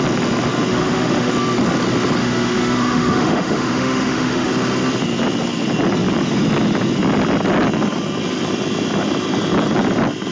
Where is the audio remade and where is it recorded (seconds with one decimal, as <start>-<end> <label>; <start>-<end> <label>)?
0.0-0.7 recorded; 0.7-1.3 remade; 1.3-2.2 recorded; 2.2-4.5 remade; 4.5-10.3 recorded